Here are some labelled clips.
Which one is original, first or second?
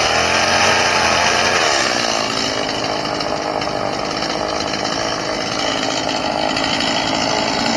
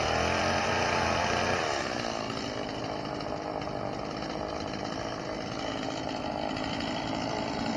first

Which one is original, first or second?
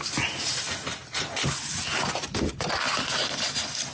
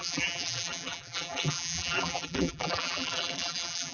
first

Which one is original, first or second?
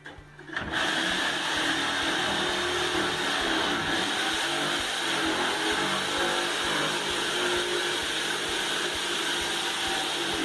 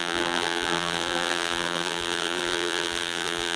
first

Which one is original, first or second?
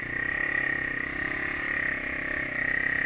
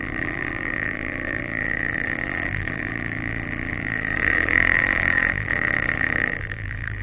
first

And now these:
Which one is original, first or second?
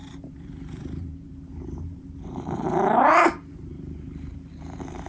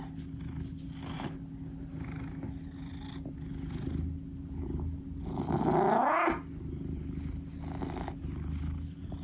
second